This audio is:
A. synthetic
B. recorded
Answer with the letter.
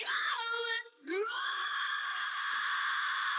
B